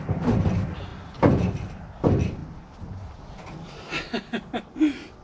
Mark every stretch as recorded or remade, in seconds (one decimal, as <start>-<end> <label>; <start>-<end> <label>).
0.0-5.2 recorded